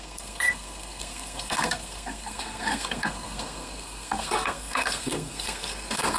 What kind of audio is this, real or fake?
fake